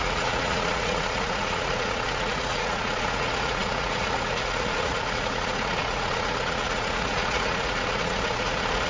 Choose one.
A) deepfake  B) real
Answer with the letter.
A